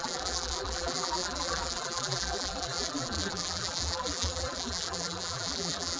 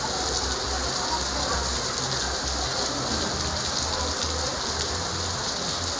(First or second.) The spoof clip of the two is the first